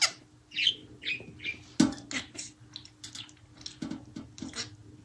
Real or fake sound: real